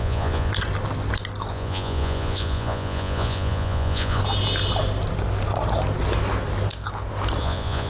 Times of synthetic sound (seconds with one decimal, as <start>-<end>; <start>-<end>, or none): 0.0-0.5; 1.5-4.2; 7.4-7.9

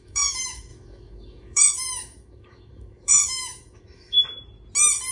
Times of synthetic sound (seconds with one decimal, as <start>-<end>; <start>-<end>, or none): 0.0-4.2

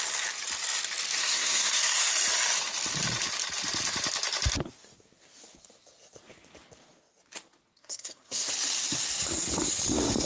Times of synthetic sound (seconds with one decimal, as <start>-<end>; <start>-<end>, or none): 1.2-2.1; 7.8-8.5